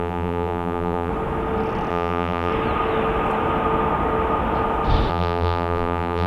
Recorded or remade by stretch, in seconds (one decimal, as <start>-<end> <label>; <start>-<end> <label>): 0.0-1.1 remade; 1.1-1.9 recorded; 1.9-2.5 remade; 2.5-5.1 recorded; 5.1-6.3 remade